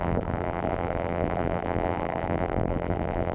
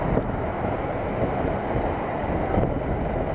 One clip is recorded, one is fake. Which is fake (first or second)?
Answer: first